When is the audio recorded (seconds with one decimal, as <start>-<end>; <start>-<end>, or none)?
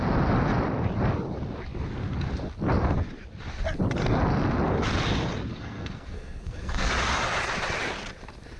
0.0-5.5; 6.9-8.6